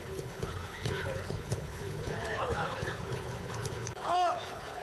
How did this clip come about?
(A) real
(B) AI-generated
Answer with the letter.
B